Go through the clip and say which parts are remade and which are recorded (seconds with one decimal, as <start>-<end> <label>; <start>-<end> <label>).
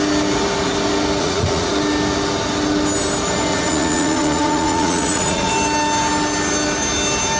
0.0-1.2 recorded; 1.2-1.7 remade; 1.7-3.5 recorded; 3.5-5.5 remade; 5.5-7.4 recorded